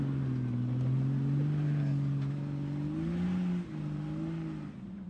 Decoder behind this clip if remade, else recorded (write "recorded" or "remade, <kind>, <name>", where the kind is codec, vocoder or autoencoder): recorded